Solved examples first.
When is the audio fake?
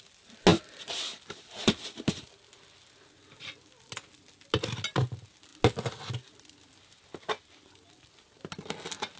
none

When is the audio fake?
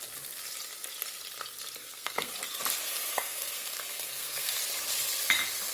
1.8-2.3 (codec, SNAC); 3.1-4.6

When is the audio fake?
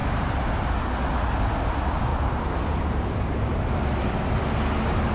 2.1-4.1 (vocoder, BigVGAN v2)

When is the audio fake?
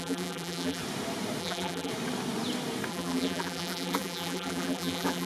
0.0-0.8 (vocoder, BigVGAN v2); 1.4-1.9; 2.9-5.3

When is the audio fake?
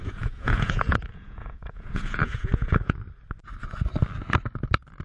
0.0-3.0 (vocoder, Vocos)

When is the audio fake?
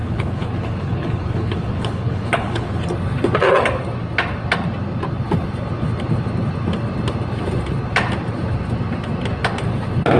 0.0-2.8 (codec, HILCodec)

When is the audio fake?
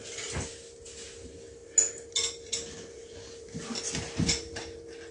none